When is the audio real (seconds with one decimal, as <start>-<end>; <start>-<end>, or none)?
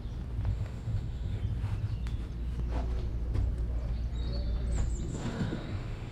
0.0-0.5; 1.4-5.1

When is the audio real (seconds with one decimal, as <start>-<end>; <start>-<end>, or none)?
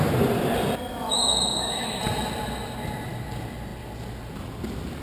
0.0-0.9; 2.0-5.0